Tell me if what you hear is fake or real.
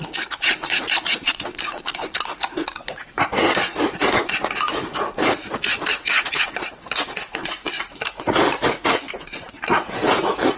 fake